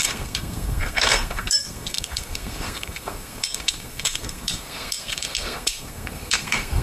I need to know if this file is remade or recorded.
remade